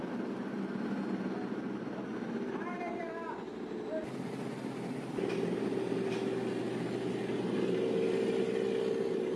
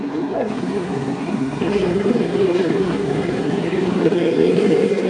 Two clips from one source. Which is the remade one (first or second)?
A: second